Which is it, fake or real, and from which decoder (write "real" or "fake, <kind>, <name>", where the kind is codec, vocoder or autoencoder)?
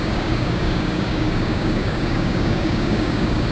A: fake, codec, DAC